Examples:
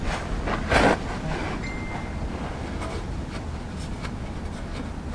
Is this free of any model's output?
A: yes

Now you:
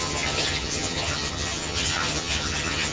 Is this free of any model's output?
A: no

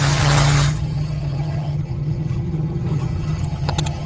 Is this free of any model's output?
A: no